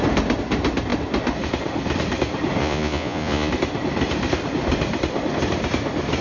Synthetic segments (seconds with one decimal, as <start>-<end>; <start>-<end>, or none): 2.6-3.5